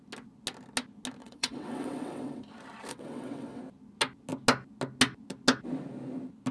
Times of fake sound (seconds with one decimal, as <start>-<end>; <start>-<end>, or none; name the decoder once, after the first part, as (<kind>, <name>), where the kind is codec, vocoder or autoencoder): 1.2-2.4 (vocoder, WaveNeXt); 2.9-3.6